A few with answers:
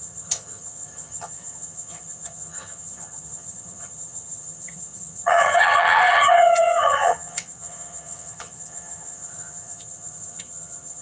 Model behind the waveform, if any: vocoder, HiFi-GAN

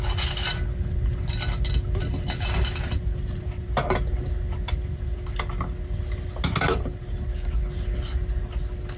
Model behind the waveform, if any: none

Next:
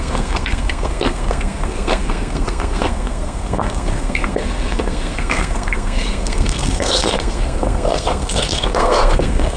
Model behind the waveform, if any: codec, SNAC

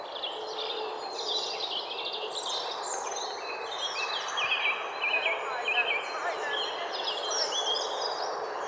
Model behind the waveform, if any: none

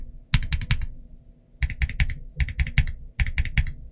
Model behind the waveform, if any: none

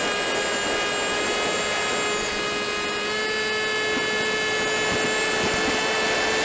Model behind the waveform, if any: none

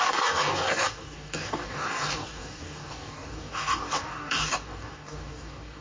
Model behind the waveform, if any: codec, DAC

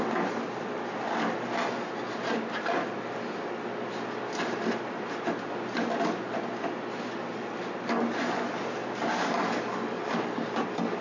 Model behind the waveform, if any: none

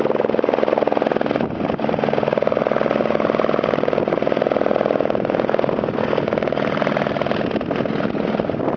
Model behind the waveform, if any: none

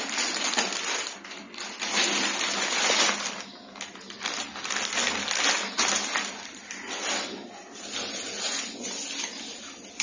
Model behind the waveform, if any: none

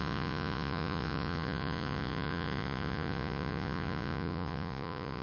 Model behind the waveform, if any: vocoder, Vocos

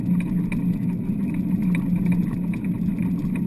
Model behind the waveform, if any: none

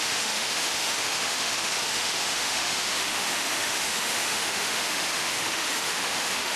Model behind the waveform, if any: autoencoder, DAC-VAE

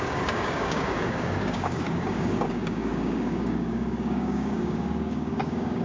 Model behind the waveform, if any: codec, DAC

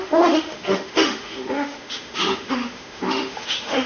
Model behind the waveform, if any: autoencoder, DAC-VAE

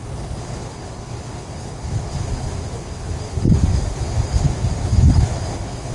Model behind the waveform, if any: codec, HILCodec